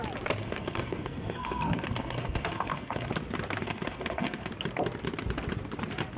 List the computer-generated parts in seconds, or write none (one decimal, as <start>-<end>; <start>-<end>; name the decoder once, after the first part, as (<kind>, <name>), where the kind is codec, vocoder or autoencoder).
0.4-3.1 (codec, SNAC); 3.6-4.5